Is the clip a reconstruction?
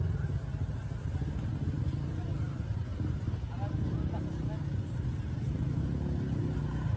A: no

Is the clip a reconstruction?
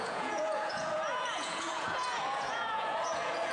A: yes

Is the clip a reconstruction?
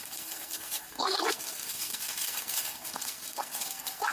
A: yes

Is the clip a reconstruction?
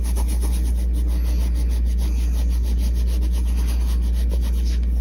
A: no